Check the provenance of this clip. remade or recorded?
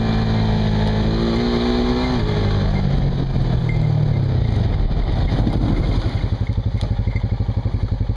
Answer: recorded